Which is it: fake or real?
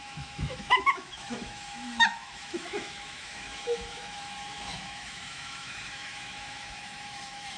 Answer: fake